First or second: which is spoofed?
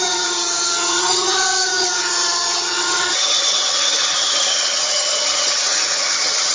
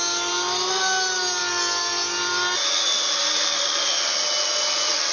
first